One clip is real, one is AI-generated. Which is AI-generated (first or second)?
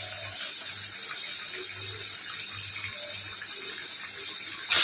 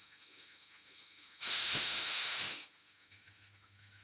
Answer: second